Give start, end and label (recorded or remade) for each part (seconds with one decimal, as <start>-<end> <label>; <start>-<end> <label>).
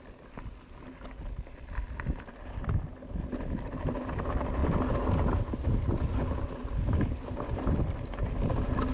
0.0-8.9 recorded